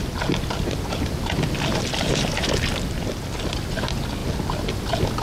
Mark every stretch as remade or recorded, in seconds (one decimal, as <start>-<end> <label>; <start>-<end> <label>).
0.0-5.2 recorded